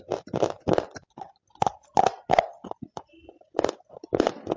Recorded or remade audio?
recorded